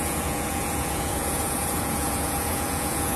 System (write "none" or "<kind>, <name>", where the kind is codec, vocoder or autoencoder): vocoder, Vocos